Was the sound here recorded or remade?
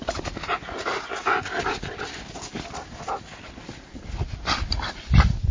recorded